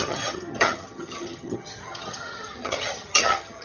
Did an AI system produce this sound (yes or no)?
yes